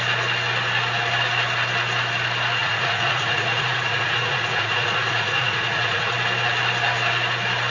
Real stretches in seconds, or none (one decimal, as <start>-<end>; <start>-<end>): 0.0-2.6; 6.1-7.7